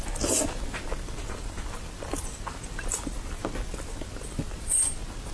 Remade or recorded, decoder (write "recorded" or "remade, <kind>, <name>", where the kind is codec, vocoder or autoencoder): recorded